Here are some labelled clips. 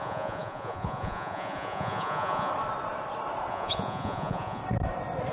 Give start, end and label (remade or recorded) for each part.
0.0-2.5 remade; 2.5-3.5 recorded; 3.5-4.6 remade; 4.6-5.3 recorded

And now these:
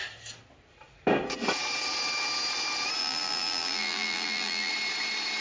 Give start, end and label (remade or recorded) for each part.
0.0-3.0 recorded; 3.0-4.7 remade; 4.7-5.4 recorded

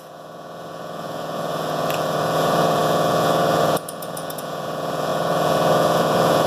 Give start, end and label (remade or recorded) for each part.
0.0-6.5 remade

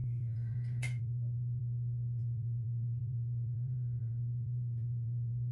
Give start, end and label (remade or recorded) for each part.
0.0-1.6 remade; 1.6-2.2 recorded; 2.2-5.5 remade

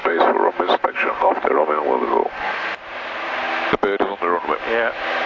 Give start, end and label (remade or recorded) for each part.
0.0-5.3 recorded

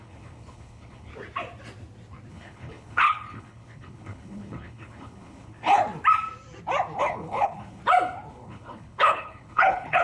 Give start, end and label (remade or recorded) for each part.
0.0-1.1 remade; 1.1-2.3 recorded; 2.3-5.8 remade; 5.8-7.0 recorded; 7.0-7.8 remade; 7.8-8.3 recorded; 8.3-10.0 remade

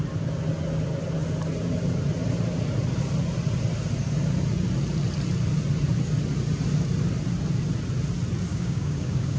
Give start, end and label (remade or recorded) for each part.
0.0-8.5 recorded; 8.5-9.4 remade

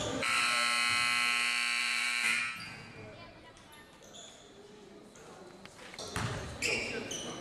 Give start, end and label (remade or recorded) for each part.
0.0-1.8 recorded; 1.8-2.4 remade; 2.4-5.9 recorded; 5.9-6.9 remade; 6.9-7.4 recorded